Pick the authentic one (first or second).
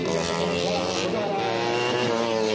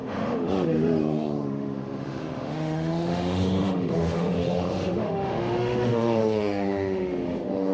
first